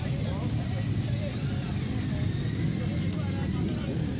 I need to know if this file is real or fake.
real